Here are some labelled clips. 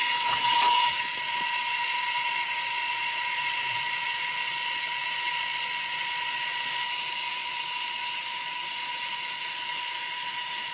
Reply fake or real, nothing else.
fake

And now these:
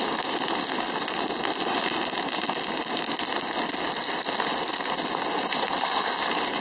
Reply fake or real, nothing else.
real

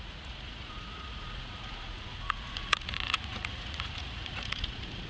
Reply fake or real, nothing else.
fake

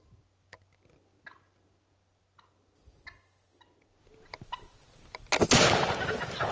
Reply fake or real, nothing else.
real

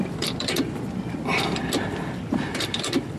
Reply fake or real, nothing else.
fake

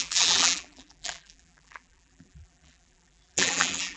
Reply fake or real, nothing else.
fake